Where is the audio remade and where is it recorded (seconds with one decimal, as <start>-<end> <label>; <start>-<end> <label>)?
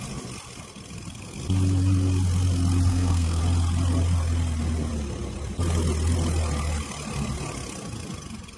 0.0-2.9 recorded; 2.9-3.4 remade; 3.4-8.6 recorded